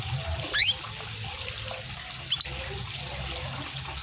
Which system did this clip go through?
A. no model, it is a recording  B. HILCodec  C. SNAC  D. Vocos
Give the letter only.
A